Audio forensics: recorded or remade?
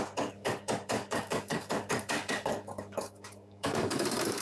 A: remade